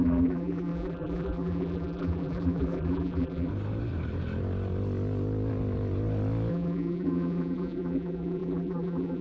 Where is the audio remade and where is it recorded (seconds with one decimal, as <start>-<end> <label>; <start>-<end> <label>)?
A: 0.0-3.5 remade; 3.5-6.5 recorded; 6.5-9.2 remade